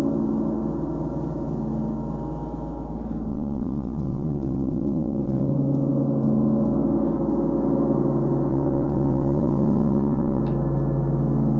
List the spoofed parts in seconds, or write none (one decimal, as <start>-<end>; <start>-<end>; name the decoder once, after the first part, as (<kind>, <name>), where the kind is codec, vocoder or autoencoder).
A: 3.3-5.5 (vocoder, WaveNeXt); 8.5-10.4

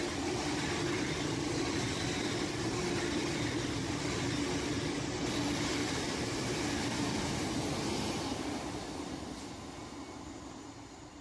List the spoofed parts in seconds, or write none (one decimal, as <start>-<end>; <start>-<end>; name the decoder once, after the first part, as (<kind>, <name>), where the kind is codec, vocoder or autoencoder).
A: none

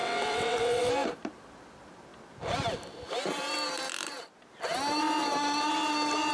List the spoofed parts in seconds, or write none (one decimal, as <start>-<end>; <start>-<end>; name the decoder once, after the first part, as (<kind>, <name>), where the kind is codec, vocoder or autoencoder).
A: 0.0-0.9 (vocoder, WaveNeXt)

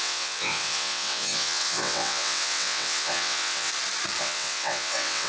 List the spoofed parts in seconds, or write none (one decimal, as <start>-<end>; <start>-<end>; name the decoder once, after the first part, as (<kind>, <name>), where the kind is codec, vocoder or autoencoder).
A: 0.0-3.7 (vocoder, WaveNeXt); 4.2-5.3

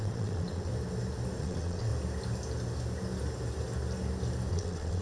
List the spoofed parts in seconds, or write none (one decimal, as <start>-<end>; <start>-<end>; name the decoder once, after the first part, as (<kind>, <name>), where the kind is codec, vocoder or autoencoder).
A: 0.0-0.7 (vocoder, WaveNeXt); 1.4-1.9; 4.5-5.0

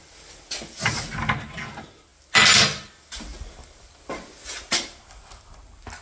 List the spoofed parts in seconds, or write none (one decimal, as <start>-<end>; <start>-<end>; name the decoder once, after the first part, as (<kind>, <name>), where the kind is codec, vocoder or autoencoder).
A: none

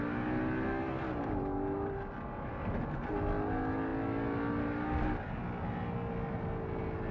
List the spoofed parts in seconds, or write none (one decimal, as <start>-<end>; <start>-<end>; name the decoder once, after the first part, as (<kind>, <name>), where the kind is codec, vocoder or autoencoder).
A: none

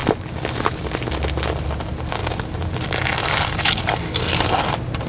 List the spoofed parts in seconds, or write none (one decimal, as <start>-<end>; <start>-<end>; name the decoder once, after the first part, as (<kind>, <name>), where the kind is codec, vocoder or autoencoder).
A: none